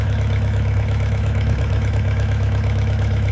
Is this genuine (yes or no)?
no